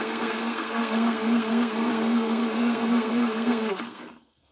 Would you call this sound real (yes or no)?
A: no